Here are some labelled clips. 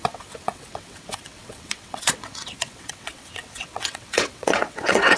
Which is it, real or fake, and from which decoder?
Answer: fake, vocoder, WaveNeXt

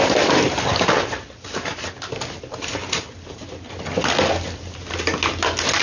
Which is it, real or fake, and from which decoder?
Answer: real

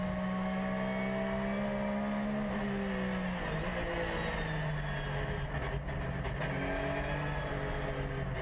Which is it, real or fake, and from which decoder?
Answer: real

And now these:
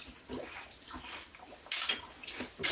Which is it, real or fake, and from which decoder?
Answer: real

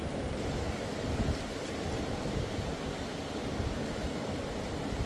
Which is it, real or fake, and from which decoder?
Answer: real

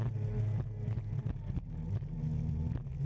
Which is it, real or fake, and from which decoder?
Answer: real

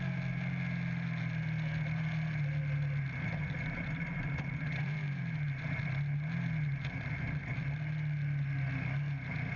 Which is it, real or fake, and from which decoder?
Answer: real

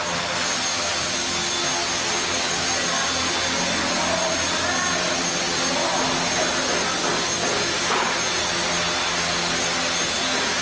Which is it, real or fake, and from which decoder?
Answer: real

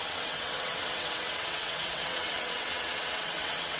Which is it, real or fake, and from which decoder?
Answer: fake, vocoder, WaveNeXt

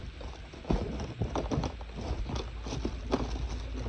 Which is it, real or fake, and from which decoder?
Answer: real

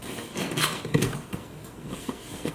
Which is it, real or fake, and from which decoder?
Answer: fake, codec, SNAC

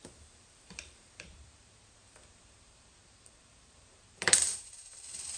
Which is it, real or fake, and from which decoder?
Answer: fake, vocoder, BigVGAN v2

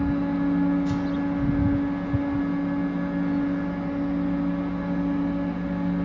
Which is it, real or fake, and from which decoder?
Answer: real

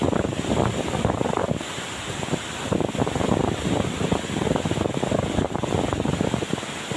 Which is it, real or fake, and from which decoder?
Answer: fake, vocoder, BigVGAN v2